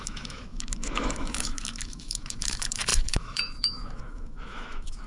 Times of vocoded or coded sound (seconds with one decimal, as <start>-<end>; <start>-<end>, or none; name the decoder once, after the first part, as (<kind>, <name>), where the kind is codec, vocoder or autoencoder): 0.0-5.1 (autoencoder, DAC-VAE)